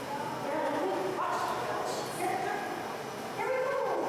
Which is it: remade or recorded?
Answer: recorded